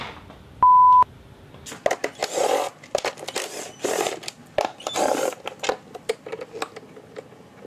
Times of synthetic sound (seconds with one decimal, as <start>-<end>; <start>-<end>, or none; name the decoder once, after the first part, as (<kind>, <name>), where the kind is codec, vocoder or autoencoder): 2.2-5.4 (vocoder, BigVGAN v2)